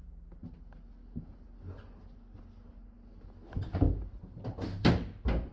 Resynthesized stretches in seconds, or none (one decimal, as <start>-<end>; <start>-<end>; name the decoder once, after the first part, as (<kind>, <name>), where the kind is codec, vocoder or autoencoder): none